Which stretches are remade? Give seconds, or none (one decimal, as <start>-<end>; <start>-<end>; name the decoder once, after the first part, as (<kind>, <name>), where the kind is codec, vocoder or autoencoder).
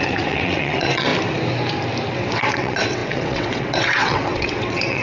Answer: 0.0-1.1 (vocoder, WaveNeXt); 2.1-5.0